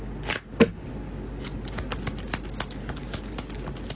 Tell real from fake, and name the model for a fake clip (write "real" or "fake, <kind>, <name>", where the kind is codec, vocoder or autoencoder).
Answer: real